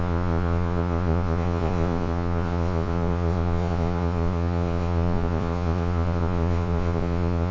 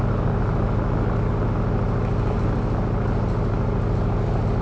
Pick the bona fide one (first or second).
second